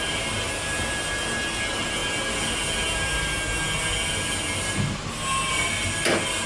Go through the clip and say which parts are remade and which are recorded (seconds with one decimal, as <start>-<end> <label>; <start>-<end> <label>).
0.0-6.5 recorded

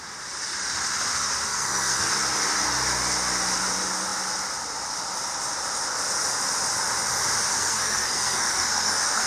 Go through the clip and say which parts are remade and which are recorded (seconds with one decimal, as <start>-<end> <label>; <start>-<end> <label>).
0.0-1.5 recorded; 1.5-2.1 remade; 2.1-7.5 recorded; 7.5-9.3 remade